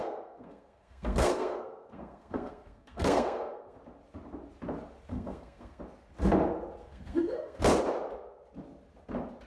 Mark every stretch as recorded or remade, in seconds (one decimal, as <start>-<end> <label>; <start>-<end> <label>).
0.0-3.8 remade; 3.8-5.1 recorded; 5.1-5.8 remade; 5.8-6.8 recorded; 6.8-7.6 remade; 7.6-9.5 recorded